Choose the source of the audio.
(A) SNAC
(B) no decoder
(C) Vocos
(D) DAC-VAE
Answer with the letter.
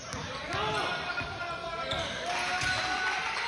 B